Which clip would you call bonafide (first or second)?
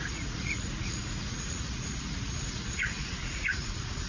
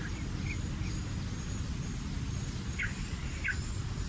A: second